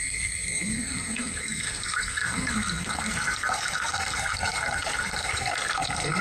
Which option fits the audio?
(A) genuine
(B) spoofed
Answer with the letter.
B